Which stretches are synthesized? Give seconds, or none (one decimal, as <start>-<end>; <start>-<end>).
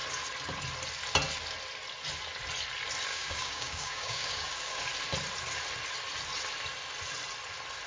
3.1-4.8